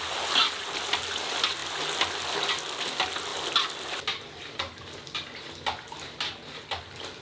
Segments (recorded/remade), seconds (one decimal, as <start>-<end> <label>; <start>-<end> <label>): 0.0-7.2 recorded